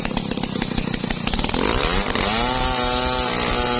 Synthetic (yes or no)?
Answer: no